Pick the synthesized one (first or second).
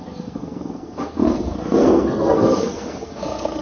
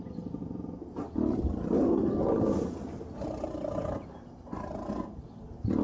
first